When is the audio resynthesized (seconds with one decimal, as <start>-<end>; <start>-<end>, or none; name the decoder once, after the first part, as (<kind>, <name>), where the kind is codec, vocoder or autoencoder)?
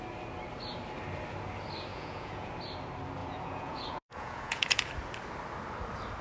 1.9-2.5 (vocoder, Vocos); 3.2-4.9